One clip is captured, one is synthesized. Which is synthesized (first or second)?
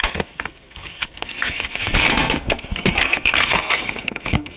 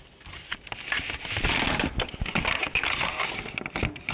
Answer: first